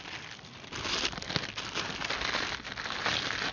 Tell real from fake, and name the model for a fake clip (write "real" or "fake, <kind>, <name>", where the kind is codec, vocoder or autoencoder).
real